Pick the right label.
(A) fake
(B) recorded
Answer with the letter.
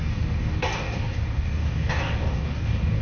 A